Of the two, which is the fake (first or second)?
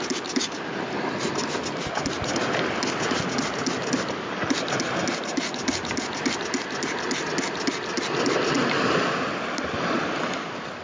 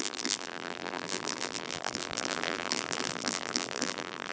second